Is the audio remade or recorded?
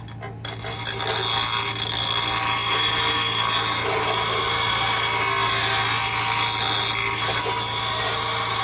recorded